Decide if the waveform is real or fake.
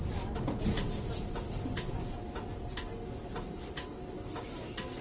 real